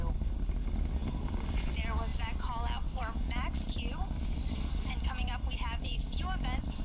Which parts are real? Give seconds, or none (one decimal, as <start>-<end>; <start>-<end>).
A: 0.0-1.0; 1.6-2.1; 6.2-6.8